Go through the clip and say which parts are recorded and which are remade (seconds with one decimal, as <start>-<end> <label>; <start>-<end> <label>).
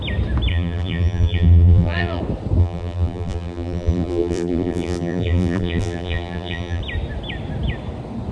0.0-0.5 recorded; 0.5-2.2 remade; 2.2-2.6 recorded; 2.6-6.8 remade; 6.8-8.3 recorded